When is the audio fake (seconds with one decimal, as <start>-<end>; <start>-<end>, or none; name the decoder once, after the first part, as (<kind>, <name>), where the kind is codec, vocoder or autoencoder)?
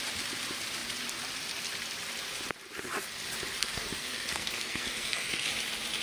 3.6-5.5 (codec, SNAC)